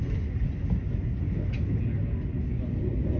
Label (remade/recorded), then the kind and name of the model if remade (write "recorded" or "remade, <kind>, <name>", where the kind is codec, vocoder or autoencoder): recorded